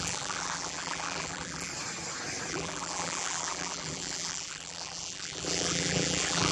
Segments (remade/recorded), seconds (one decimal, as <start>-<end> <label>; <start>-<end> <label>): 0.0-1.7 remade; 1.7-2.5 recorded; 2.5-6.5 remade